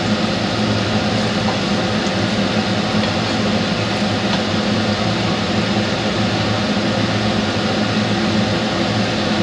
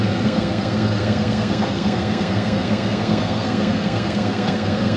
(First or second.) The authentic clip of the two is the first